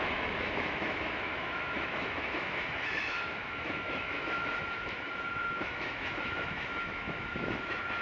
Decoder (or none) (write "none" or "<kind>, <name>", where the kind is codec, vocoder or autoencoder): autoencoder, DAC-VAE